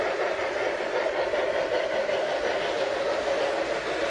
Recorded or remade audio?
recorded